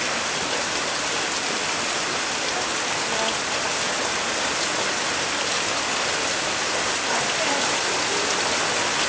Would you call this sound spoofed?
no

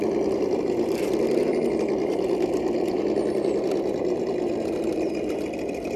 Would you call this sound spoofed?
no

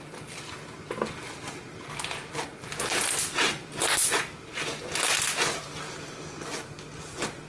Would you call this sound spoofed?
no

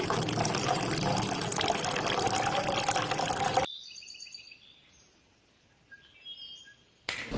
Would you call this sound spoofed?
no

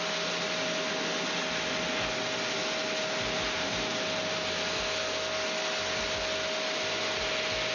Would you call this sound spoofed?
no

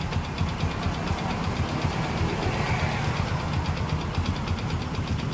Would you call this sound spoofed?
no